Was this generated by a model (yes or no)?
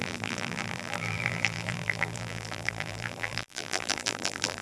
yes